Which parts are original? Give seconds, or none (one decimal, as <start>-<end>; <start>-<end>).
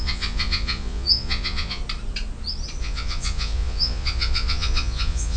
1.8-2.8